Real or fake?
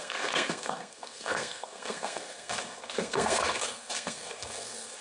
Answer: fake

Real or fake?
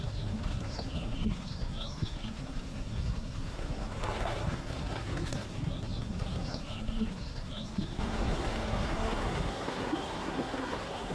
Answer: fake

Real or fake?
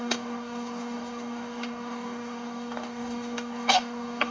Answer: fake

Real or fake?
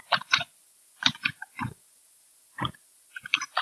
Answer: fake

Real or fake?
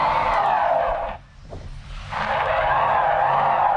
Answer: real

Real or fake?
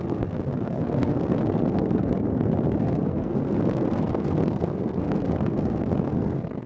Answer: fake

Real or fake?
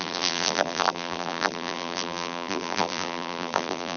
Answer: fake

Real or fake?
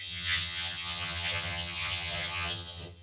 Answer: fake